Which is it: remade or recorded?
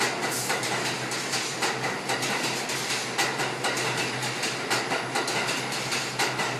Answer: recorded